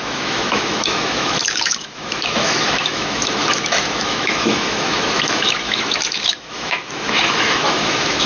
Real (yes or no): no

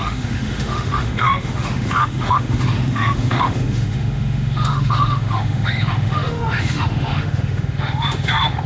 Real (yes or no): no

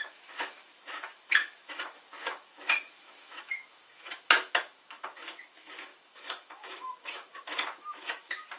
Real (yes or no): no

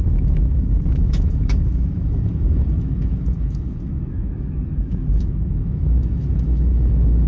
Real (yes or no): no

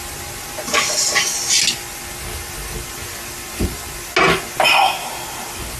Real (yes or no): yes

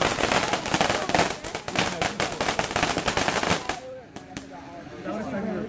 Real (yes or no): yes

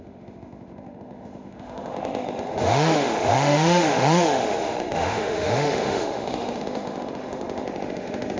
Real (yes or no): no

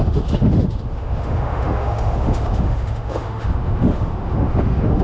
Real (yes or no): no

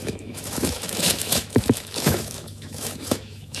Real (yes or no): no